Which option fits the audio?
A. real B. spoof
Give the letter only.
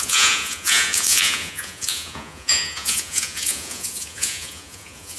B